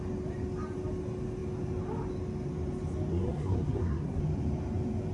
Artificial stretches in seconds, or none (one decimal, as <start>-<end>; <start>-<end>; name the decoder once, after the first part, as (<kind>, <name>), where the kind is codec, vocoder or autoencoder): 3.1-4.2 (codec, SNAC)